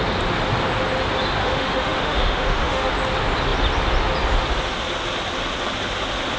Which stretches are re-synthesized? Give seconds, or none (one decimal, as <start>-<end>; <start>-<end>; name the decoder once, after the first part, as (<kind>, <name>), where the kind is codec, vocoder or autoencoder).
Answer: 1.4-2.9 (autoencoder, DAC-VAE)